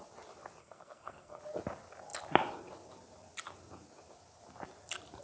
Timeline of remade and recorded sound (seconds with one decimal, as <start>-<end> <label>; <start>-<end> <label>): 0.0-0.6 recorded; 0.6-1.4 remade; 1.4-5.2 recorded